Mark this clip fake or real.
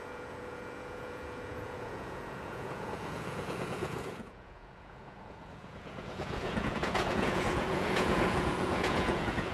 fake